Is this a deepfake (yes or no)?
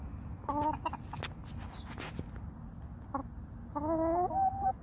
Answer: no